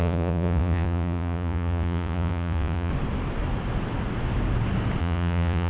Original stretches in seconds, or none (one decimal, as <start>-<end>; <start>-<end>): 2.9-5.0